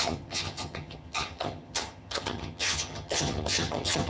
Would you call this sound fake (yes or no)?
yes